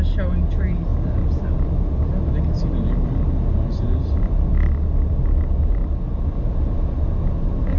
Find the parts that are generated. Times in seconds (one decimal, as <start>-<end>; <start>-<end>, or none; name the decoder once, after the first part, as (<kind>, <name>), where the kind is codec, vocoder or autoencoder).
none